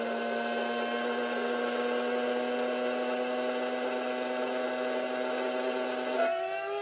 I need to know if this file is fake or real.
real